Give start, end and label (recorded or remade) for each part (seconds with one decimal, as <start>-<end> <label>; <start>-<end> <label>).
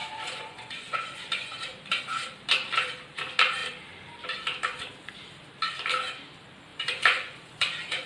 0.0-2.0 remade; 2.0-6.7 recorded; 6.7-8.1 remade